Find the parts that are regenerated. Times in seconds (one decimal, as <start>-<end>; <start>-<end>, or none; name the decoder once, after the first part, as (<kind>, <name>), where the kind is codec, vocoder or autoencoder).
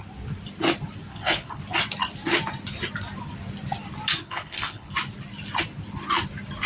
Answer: 1.1-1.6 (codec, HILCodec); 4.2-4.9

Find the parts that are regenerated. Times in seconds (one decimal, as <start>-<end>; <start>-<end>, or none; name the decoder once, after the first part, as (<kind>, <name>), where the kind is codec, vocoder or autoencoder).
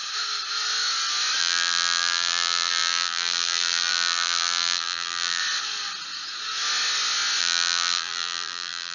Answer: 1.4-5.4 (vocoder, BigVGAN v2); 7.4-8.9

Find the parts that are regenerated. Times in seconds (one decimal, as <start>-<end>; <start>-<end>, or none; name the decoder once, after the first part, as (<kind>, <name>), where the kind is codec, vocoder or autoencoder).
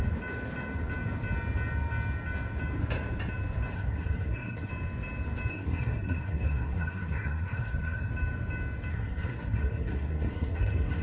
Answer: 3.7-4.7 (codec, SNAC); 5.5-8.1; 8.9-11.0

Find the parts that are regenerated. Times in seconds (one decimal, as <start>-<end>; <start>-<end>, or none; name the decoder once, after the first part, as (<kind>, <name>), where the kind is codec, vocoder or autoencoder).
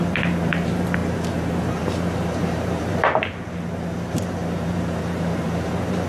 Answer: 0.0-6.1 (vocoder, BigVGAN v2)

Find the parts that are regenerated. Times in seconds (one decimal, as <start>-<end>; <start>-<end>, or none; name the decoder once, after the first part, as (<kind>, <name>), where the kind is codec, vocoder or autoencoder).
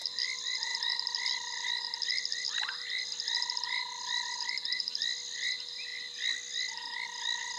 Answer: none